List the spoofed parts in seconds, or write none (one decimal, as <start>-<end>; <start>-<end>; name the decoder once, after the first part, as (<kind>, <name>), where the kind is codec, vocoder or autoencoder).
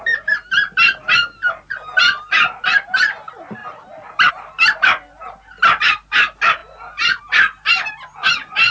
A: none